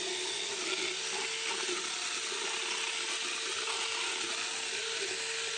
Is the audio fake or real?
real